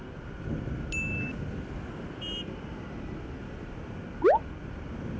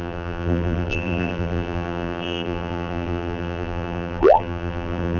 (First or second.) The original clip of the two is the first